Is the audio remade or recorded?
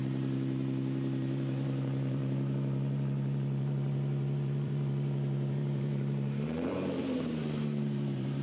remade